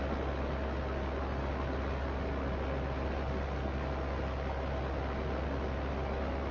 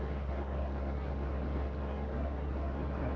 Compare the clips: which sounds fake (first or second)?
second